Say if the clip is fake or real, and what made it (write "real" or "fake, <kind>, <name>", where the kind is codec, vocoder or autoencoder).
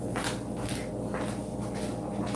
real